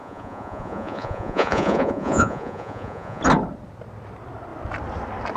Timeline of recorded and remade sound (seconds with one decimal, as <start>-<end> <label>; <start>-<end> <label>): 0.0-3.2 remade; 3.2-5.4 recorded